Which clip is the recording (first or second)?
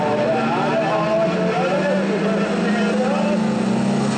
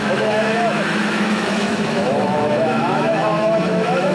first